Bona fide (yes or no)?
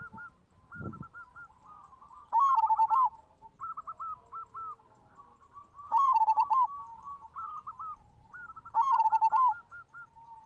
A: yes